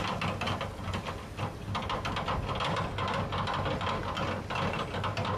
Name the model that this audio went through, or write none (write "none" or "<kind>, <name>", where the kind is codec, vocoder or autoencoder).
none